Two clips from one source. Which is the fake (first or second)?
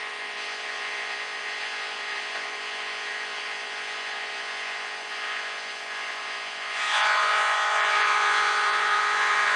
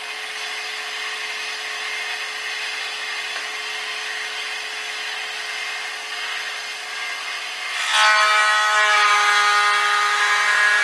first